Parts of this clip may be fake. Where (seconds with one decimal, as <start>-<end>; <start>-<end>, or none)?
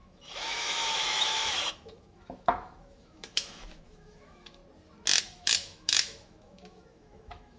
0.0-4.6; 5.2-7.6